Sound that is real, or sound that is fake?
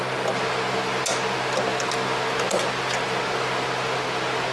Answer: real